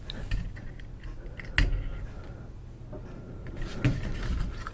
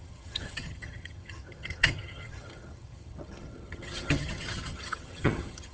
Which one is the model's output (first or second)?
second